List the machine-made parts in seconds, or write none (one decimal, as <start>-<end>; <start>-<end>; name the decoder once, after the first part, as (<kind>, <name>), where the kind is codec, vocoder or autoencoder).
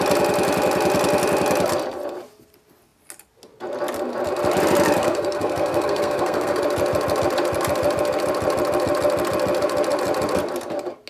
5.0-6.6 (codec, SNAC)